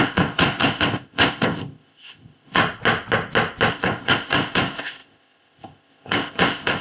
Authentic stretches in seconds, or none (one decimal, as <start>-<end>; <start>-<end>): 2.6-3.7